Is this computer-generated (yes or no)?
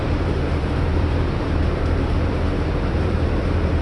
yes